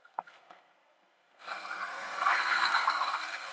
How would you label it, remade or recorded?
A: remade